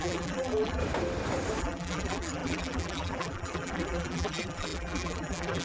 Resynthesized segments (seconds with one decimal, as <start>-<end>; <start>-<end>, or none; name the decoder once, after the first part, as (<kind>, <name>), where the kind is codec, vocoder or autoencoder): 0.0-0.8 (vocoder, BigVGAN v2); 1.6-5.6